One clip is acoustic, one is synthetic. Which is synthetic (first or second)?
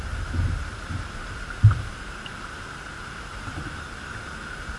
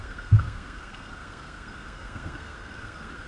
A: second